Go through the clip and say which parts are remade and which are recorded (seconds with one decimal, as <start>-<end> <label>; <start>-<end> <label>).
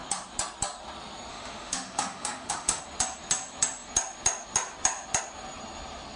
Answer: 0.0-1.3 recorded; 1.3-2.8 remade; 2.8-6.2 recorded